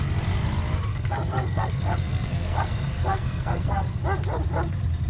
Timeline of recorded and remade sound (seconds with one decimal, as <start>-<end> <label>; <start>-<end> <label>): 0.0-0.9 recorded; 0.9-4.0 remade; 4.0-5.1 recorded